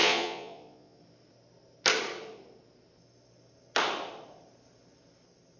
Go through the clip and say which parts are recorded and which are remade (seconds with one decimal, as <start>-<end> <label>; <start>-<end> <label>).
0.0-1.0 remade; 1.0-5.6 recorded

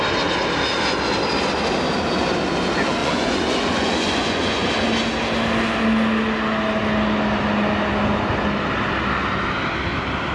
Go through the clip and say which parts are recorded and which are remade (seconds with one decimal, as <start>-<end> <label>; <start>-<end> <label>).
0.0-3.0 recorded; 3.0-4.7 remade; 4.7-10.3 recorded

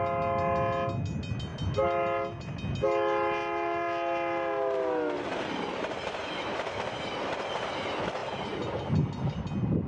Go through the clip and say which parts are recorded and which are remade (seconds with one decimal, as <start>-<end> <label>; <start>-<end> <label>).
0.0-9.9 recorded

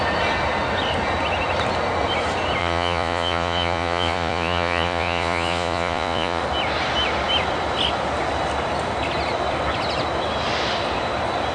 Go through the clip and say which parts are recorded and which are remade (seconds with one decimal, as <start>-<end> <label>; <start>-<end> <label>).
0.0-2.6 recorded; 2.6-6.4 remade; 6.4-11.5 recorded

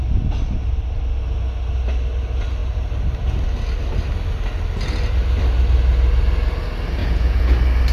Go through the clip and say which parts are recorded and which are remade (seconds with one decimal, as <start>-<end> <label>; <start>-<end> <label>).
0.0-7.0 recorded; 7.0-7.5 remade; 7.5-7.9 recorded

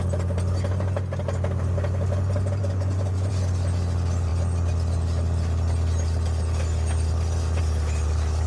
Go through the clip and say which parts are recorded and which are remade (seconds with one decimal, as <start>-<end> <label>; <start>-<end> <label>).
0.0-2.6 recorded; 2.6-3.3 remade; 3.3-8.5 recorded

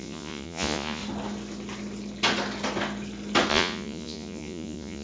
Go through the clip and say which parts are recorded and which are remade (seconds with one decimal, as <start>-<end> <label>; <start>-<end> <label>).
0.0-1.0 remade; 1.0-3.5 recorded; 3.5-5.0 remade